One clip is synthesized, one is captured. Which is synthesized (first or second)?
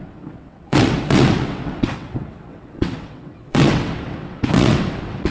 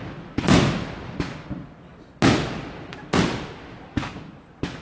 first